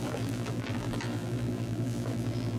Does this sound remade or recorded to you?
remade